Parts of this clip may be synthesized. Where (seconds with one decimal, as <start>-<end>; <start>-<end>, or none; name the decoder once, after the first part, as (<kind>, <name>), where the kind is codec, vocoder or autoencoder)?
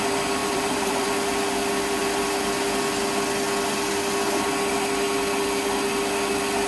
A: 0.4-1.1 (vocoder, BigVGAN v2)